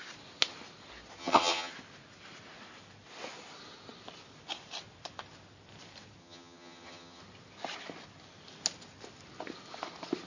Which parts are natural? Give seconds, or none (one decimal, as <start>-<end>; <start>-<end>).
0.0-1.2; 1.7-6.2; 7.2-10.3